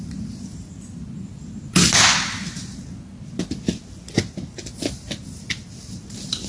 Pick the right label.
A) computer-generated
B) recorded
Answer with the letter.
B